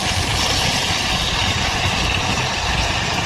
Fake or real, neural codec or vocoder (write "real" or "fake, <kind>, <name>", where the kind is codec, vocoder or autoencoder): fake, vocoder, BigVGAN v2